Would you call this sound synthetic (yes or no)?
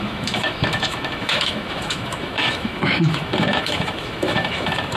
yes